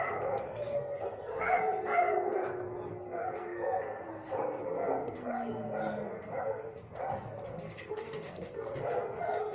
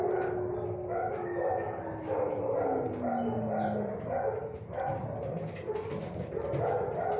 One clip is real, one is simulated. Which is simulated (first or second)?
first